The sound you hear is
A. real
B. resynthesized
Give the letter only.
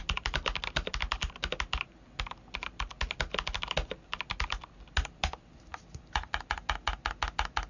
A